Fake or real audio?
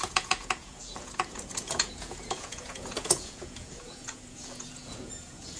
fake